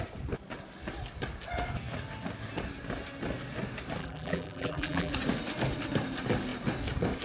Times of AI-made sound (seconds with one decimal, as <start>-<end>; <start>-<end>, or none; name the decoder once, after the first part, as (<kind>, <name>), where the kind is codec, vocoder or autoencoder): 4.0-5.1 (vocoder, BigVGAN v2)